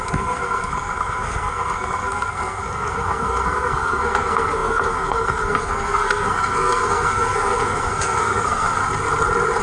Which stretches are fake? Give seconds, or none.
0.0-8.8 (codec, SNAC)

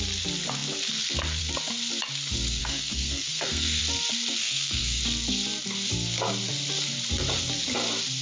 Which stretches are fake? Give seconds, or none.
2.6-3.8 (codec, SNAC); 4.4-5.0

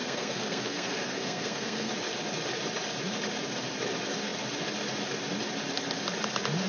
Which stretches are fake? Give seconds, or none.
0.0-1.9 (codec, SNAC)

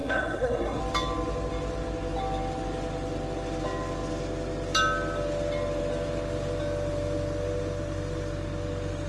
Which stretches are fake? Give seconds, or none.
0.0-0.8 (codec, SNAC)

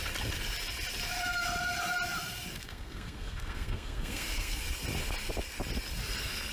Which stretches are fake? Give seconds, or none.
2.6-4.6 (codec, SNAC)

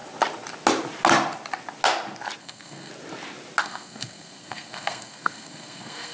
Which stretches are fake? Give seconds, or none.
2.4-2.9 (codec, SNAC); 3.6-6.1